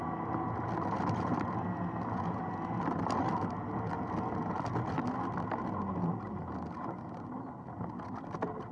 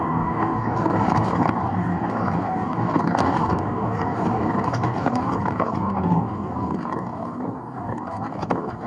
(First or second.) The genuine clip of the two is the first